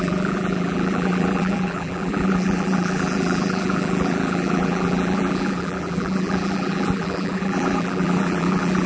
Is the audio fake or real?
fake